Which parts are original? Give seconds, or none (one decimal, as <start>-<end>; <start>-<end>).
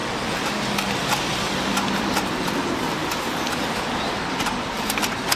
0.0-5.4